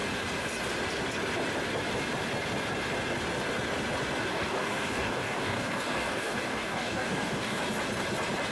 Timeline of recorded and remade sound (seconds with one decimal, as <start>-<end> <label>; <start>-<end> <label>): 0.0-4.3 recorded; 4.3-7.6 remade; 7.6-8.5 recorded